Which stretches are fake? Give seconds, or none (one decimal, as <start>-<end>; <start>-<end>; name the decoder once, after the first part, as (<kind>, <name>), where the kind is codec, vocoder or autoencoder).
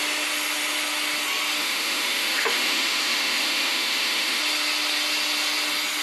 1.6-4.4 (autoencoder, DAC-VAE)